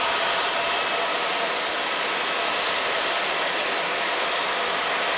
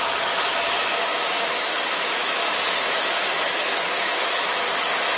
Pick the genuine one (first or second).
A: first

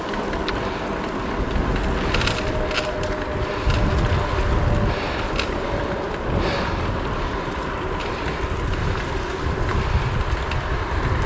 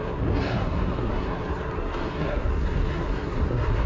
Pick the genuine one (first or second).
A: first